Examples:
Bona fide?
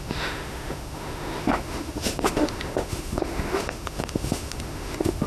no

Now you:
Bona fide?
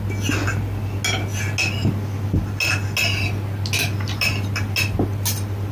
yes